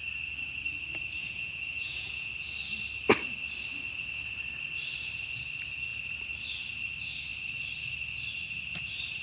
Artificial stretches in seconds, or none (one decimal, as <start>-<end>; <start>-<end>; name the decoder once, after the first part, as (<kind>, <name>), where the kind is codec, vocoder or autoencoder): 1.2-2.3 (vocoder, Vocos)